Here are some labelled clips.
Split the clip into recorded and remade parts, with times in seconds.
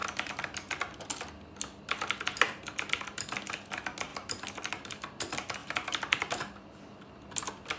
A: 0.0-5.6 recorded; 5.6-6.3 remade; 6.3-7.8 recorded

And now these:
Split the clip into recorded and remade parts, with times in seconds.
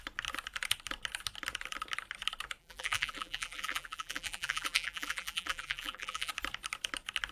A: 0.0-2.6 recorded; 2.6-6.3 remade; 6.3-7.3 recorded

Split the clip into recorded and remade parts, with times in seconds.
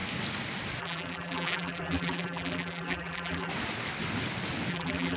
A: 0.0-0.8 recorded; 0.8-3.5 remade; 3.5-4.7 recorded; 4.7-5.2 remade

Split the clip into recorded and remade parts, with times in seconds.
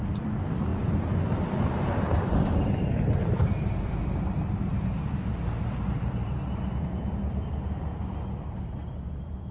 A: 0.0-0.7 remade; 0.7-2.3 recorded; 2.3-4.7 remade; 4.7-5.3 recorded; 5.3-7.9 remade; 7.9-8.5 recorded; 8.5-9.5 remade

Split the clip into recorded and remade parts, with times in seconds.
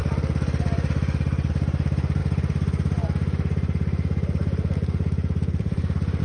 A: 0.0-2.2 recorded; 2.2-6.2 remade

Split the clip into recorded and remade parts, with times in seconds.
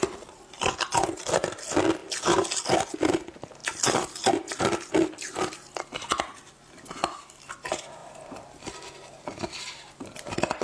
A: 0.0-10.6 recorded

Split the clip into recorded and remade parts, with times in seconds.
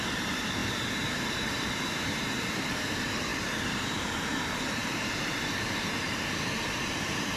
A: 0.0-7.4 remade